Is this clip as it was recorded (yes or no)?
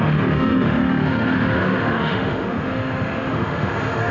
no